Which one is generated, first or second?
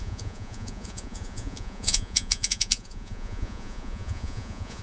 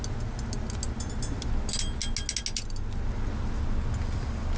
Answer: first